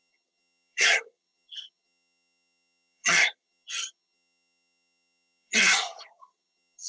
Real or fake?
fake